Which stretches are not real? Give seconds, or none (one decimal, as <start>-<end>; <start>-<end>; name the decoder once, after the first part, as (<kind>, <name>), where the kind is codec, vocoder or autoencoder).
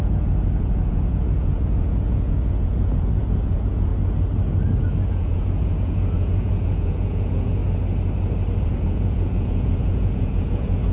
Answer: 0.0-3.9 (vocoder, Vocos); 4.8-7.6; 8.6-10.9